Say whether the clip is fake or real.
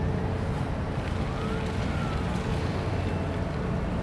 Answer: real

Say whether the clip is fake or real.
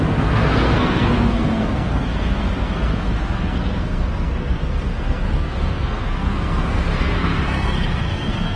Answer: fake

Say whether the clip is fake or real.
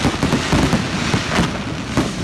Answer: real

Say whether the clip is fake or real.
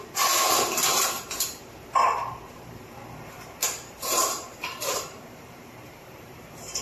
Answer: fake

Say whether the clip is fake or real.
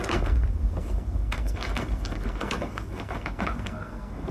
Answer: fake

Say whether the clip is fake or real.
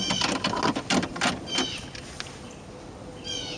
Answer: real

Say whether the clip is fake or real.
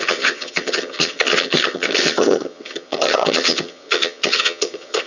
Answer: fake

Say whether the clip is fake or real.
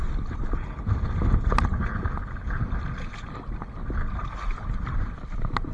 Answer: real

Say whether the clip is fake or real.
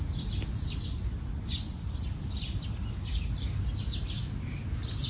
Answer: real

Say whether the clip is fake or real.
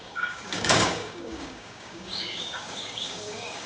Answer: fake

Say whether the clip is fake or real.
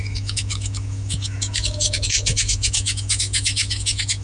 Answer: fake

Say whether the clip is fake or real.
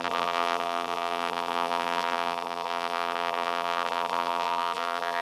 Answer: fake